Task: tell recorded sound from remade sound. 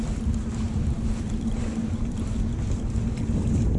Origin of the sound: recorded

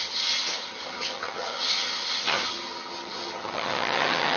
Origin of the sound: remade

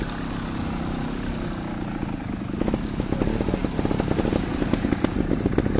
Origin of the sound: recorded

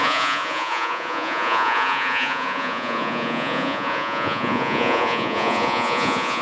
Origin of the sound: remade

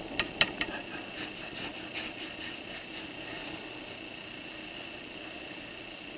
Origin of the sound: recorded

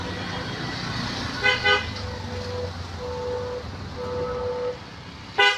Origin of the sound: recorded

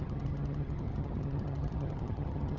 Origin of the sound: remade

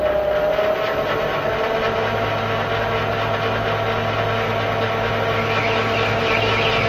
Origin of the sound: recorded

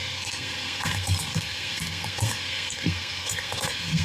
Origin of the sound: remade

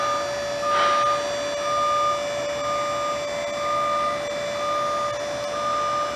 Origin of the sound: recorded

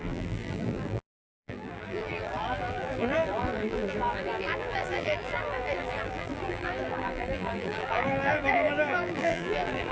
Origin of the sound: remade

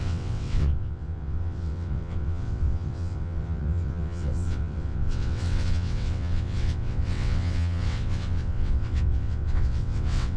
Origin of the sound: remade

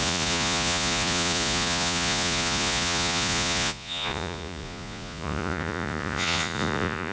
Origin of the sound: remade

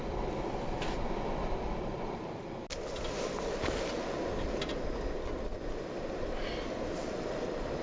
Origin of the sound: recorded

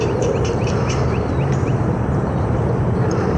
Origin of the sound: remade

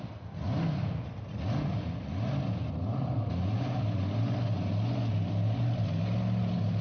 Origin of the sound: recorded